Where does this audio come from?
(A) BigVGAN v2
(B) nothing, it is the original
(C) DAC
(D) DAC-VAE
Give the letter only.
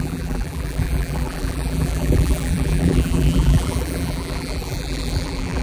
A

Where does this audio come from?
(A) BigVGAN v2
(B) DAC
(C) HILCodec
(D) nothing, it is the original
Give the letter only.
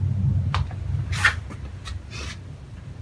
A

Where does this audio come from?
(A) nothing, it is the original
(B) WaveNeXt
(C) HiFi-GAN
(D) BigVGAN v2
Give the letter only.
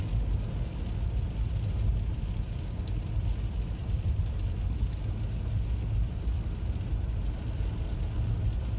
A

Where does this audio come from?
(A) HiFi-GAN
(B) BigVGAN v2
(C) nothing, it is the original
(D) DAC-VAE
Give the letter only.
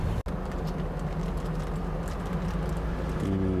C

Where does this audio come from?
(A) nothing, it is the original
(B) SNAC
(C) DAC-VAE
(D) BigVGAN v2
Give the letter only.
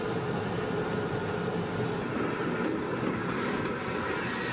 A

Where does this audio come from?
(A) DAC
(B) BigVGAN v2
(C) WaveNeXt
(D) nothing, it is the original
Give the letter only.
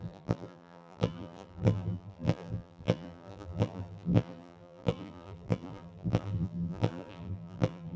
B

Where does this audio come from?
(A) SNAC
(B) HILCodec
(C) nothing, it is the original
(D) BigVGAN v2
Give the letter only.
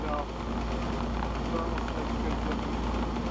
C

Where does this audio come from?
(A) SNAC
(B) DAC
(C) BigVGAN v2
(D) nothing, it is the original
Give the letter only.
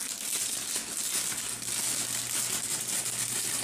D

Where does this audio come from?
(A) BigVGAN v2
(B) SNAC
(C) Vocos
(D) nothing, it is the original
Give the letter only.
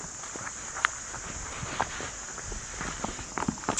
D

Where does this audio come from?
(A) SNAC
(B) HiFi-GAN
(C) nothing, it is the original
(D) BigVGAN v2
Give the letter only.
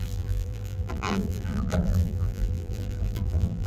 D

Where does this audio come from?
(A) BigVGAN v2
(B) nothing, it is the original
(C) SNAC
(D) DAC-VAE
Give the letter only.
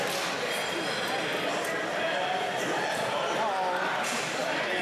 B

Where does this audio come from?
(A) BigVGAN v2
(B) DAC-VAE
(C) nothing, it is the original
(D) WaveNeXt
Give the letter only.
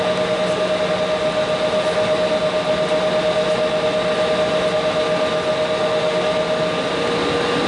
C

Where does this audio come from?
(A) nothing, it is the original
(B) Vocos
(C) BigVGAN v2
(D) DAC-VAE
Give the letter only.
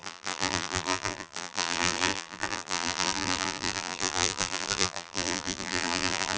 C